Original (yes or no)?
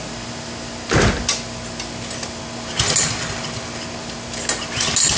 yes